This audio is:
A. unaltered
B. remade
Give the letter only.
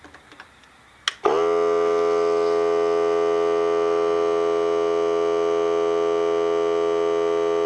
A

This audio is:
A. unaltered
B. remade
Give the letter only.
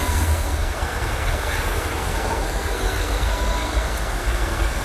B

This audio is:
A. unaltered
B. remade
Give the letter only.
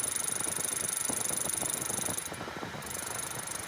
A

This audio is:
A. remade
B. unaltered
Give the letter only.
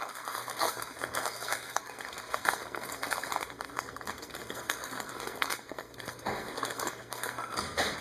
A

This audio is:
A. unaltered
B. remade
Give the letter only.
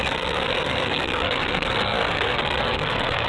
B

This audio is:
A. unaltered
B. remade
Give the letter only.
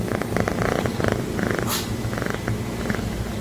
A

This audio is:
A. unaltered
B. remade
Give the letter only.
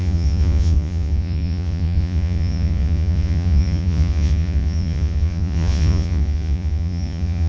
B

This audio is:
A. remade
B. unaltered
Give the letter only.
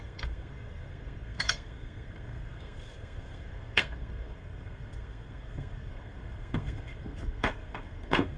A